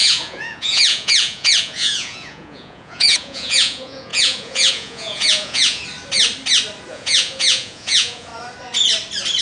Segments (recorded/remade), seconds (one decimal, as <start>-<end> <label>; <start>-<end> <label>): 0.0-5.8 remade; 5.8-6.9 recorded; 6.9-8.3 remade; 8.3-9.4 recorded